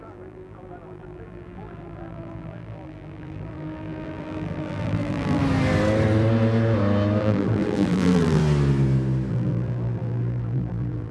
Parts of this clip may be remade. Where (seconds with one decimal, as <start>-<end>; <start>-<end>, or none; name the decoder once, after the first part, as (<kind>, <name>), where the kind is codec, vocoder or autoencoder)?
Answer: 0.0-5.4 (vocoder, BigVGAN v2); 7.2-8.4; 9.3-11.1